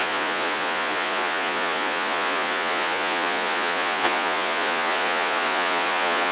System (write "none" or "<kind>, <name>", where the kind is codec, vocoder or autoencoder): vocoder, Vocos